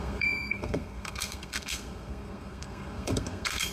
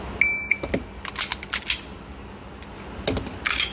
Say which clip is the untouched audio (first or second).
second